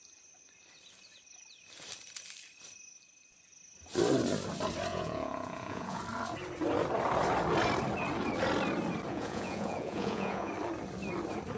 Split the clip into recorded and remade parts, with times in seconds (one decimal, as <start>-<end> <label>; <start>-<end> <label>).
0.0-4.9 recorded; 4.9-6.0 remade; 6.0-9.1 recorded; 9.1-10.5 remade; 10.5-11.6 recorded